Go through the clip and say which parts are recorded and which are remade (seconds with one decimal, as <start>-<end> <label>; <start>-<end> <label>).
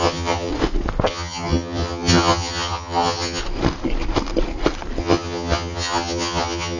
0.0-0.5 remade; 0.5-1.1 recorded; 1.1-3.4 remade; 3.4-5.0 recorded; 5.0-6.8 remade